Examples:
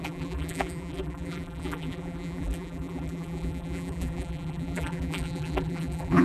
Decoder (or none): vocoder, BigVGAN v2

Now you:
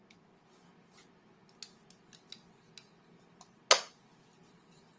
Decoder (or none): none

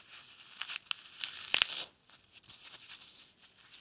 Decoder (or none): none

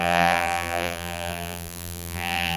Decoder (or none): vocoder, BigVGAN v2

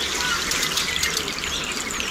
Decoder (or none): none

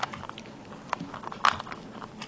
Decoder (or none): none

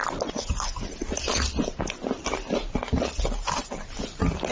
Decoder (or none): none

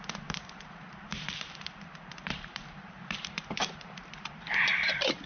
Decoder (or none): vocoder, BigVGAN v2